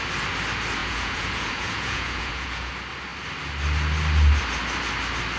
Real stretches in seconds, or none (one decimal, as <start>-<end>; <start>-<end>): 0.0-0.8; 2.7-5.4